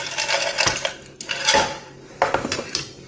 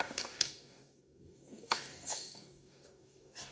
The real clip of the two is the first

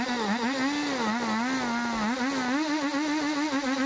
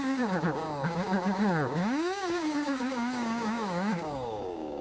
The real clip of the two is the first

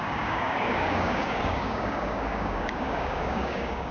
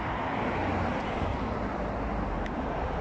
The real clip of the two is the second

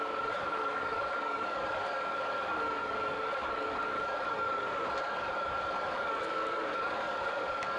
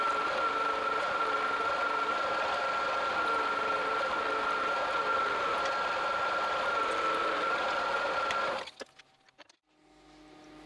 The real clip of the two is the second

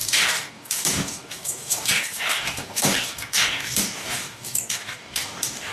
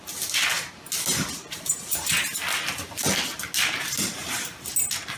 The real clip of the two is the second